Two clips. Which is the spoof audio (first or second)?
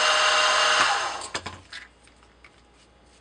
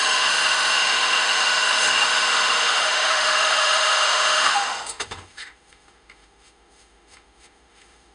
second